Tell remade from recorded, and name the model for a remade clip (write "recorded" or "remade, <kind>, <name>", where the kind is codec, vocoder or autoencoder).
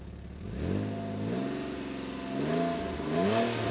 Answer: recorded